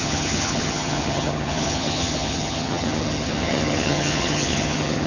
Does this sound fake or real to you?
fake